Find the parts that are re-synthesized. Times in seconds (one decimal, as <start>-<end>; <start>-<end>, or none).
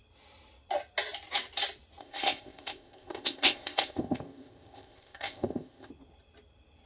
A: 2.0-5.9